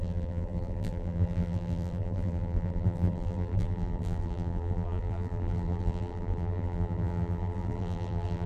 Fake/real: fake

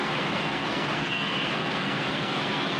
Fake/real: fake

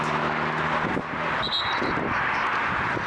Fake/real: real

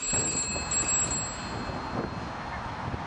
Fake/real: real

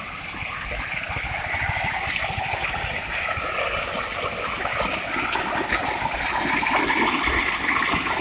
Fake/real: fake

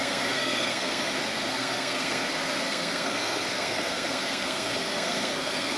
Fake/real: fake